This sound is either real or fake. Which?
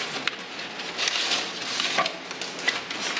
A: real